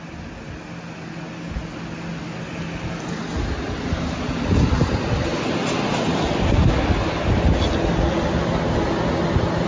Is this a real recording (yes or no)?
yes